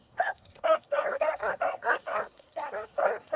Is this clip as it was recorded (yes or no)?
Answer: no